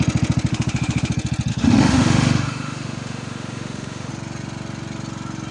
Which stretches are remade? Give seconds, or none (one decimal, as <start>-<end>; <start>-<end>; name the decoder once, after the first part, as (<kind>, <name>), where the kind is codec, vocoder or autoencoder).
0.5-1.1 (autoencoder, DAC-VAE); 1.5-4.1